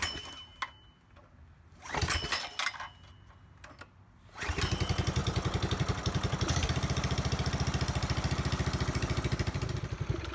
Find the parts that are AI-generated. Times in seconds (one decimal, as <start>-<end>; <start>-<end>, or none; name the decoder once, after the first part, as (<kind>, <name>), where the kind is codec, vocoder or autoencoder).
none